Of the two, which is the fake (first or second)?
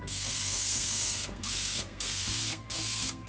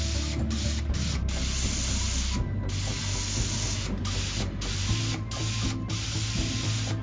first